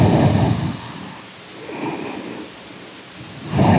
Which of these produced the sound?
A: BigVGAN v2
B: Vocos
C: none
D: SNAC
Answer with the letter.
C